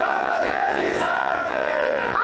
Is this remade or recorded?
remade